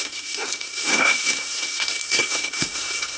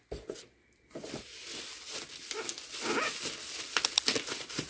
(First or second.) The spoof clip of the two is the first